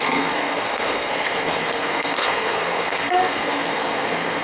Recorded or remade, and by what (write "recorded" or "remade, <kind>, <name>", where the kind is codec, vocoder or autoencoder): remade, codec, SNAC